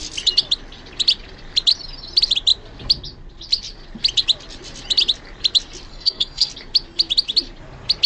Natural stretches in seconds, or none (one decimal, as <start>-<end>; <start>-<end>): 0.0-5.9; 6.5-8.1